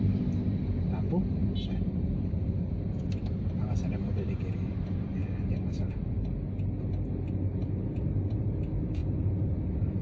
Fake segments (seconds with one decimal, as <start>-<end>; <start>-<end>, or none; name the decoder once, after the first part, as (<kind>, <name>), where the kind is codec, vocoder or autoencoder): 0.0-5.2 (vocoder, BigVGAN v2); 8.4-9.0